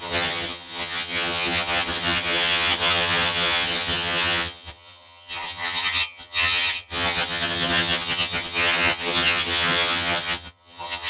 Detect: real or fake fake